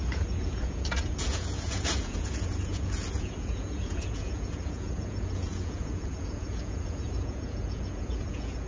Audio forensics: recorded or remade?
remade